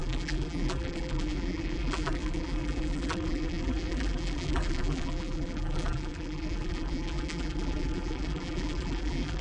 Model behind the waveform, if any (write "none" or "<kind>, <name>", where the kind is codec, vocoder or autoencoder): vocoder, BigVGAN v2